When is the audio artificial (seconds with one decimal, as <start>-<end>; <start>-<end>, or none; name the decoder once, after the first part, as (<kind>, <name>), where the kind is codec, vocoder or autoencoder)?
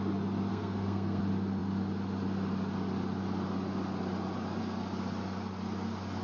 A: 0.5-1.2 (codec, SNAC)